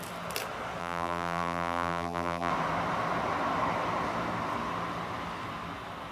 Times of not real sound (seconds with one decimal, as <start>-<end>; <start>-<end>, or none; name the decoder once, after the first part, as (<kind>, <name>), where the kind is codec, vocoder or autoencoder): 0.8-2.5 (vocoder, BigVGAN v2)